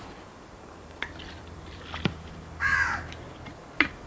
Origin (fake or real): fake